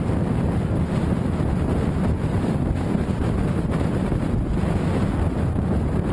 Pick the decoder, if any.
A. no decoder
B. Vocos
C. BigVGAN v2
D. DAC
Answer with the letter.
A